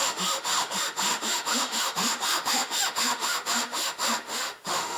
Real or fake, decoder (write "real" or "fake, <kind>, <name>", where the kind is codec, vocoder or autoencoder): fake, autoencoder, DAC-VAE